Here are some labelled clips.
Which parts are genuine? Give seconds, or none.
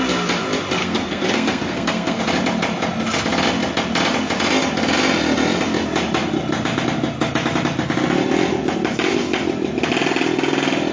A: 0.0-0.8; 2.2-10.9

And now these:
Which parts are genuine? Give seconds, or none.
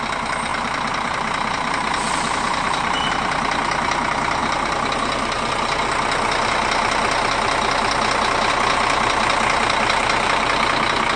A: 0.0-0.5; 3.1-11.2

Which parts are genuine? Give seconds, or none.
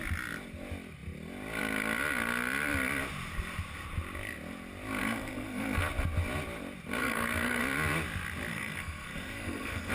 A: 0.0-5.0; 5.8-7.0; 7.6-8.5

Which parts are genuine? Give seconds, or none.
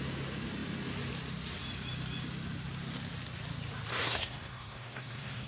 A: 0.0-3.9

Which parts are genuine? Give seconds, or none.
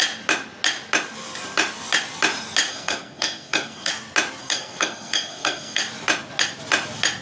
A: 0.0-2.7; 3.9-4.4; 5.8-7.2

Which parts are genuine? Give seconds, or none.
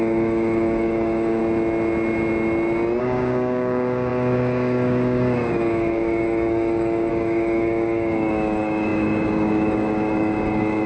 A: 1.4-3.0